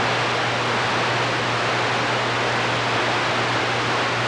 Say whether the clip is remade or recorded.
recorded